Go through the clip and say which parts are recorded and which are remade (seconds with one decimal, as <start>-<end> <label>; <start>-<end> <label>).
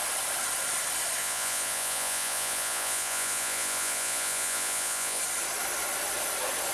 0.0-1.2 recorded; 1.2-5.2 remade; 5.2-6.7 recorded